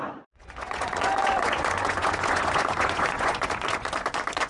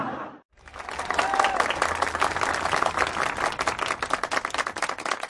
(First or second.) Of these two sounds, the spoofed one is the first